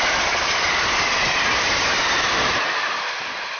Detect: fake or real fake